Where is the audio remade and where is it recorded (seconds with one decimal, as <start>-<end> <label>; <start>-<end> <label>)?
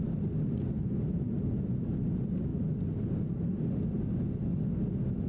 0.0-5.3 recorded